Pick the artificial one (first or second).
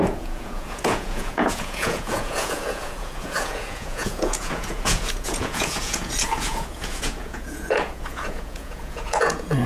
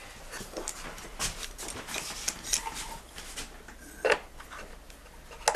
first